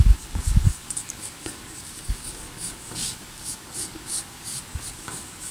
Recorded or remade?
remade